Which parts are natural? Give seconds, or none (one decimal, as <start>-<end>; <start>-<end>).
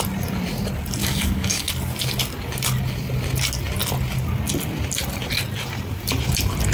0.0-1.0; 1.7-6.7